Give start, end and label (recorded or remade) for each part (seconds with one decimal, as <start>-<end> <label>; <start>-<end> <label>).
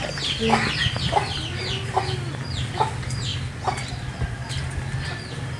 0.0-3.3 remade; 3.3-3.9 recorded; 3.9-5.6 remade